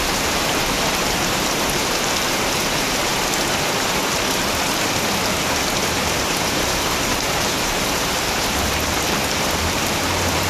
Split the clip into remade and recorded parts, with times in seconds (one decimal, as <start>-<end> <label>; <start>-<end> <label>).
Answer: 0.0-3.1 remade; 3.1-6.1 recorded; 6.1-10.5 remade